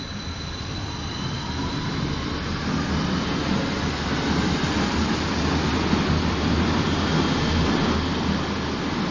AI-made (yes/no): no